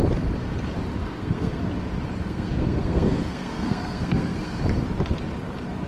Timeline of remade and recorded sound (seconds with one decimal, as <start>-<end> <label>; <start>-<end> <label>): 0.0-1.0 recorded; 1.0-1.6 remade; 1.6-2.2 recorded; 2.2-4.6 remade; 4.6-5.9 recorded